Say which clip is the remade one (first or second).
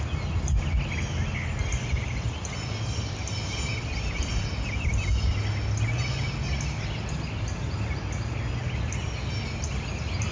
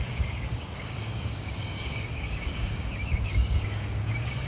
second